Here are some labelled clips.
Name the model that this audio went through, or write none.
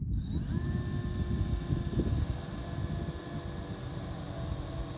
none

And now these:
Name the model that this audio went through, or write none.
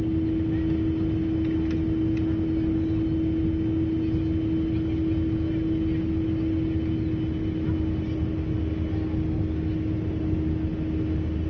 none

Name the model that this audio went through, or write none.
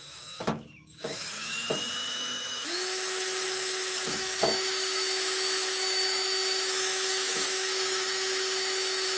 autoencoder, DAC-VAE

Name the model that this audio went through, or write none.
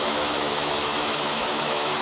autoencoder, DAC-VAE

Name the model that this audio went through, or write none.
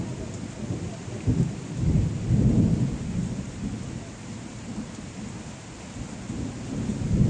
none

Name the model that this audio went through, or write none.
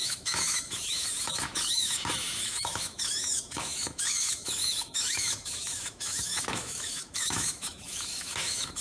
autoencoder, DAC-VAE